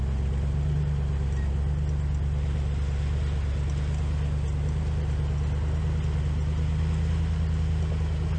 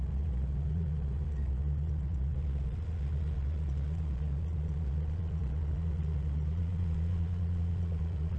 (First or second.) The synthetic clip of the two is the second